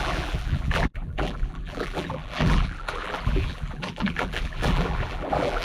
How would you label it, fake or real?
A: fake